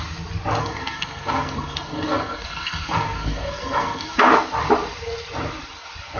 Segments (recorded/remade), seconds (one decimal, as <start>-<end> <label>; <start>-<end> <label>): 0.0-0.6 recorded; 0.6-4.3 remade; 4.3-6.2 recorded